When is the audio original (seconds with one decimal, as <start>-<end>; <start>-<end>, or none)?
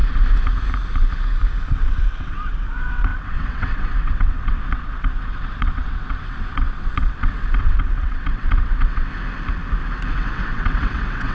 0.0-1.7; 9.1-10.1